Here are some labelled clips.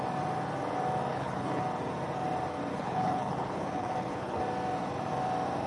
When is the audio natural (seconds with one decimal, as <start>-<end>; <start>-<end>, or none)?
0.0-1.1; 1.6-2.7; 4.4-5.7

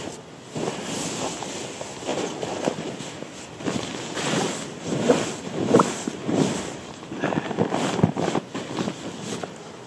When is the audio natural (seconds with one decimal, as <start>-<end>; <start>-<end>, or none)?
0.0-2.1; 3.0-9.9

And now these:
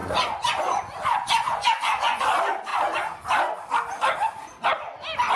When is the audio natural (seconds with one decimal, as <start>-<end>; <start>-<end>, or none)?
2.2-5.4

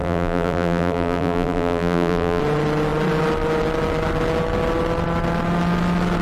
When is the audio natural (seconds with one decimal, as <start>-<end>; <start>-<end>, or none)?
2.4-6.2

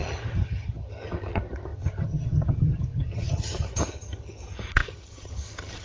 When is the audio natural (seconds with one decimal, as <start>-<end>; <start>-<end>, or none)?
none